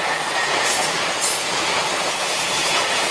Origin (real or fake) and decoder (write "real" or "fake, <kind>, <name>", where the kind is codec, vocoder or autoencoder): fake, vocoder, Vocos